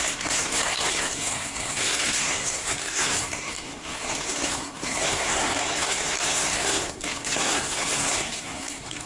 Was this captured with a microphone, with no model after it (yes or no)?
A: no